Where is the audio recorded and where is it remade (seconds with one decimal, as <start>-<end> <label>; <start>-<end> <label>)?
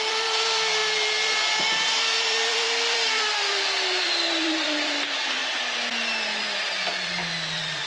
0.0-7.9 remade